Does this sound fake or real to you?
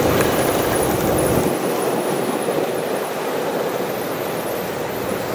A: real